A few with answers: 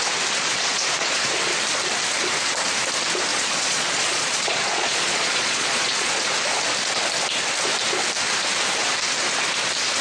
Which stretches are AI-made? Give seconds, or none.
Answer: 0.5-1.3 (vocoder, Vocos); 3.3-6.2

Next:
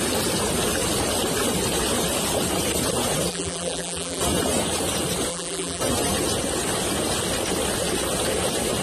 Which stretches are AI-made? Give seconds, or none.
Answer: 3.3-4.2 (vocoder, BigVGAN v2); 5.3-5.8

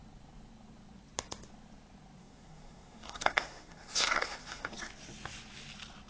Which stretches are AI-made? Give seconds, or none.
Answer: 2.2-4.9 (codec, SNAC)

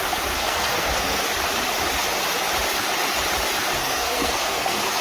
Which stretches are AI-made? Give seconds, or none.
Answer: 0.4-1.2 (codec, SNAC); 3.8-5.0

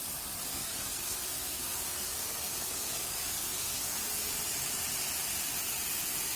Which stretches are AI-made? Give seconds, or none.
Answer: 0.5-4.3 (codec, SNAC)